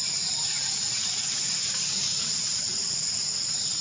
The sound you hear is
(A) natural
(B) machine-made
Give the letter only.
B